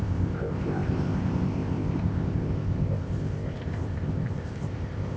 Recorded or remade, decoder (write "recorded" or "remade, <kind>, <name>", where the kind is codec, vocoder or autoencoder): remade, codec, ZipCodec